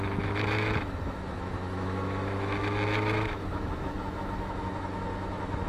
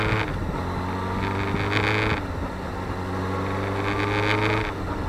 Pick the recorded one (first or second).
second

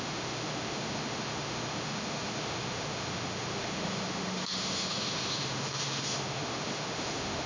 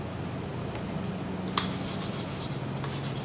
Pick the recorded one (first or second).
second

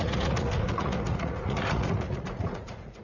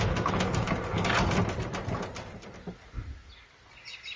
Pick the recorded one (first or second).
second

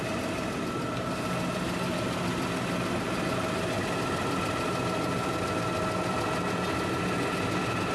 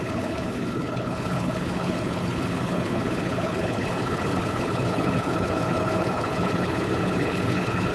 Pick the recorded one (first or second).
first